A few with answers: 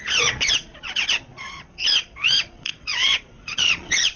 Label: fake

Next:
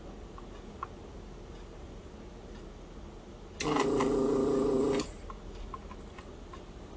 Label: real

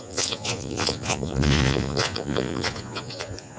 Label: fake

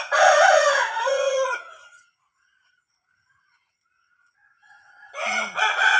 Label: fake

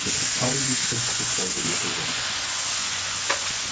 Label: fake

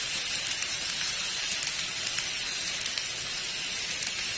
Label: real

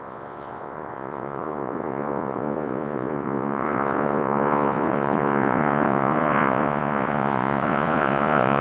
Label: fake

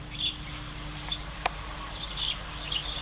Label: real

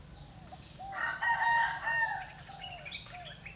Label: real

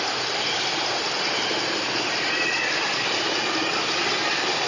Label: real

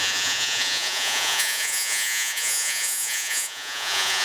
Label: fake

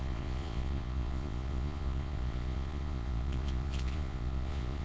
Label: fake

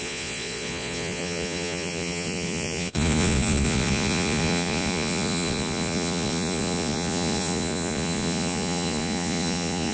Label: fake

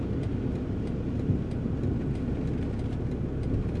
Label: real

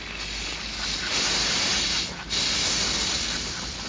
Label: real